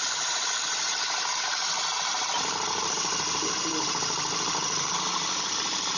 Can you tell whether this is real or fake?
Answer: fake